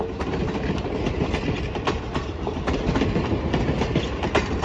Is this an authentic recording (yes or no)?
yes